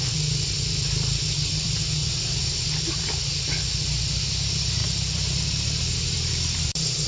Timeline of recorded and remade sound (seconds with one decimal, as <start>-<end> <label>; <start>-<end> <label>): 0.0-2.0 remade; 2.0-4.3 recorded; 4.3-7.1 remade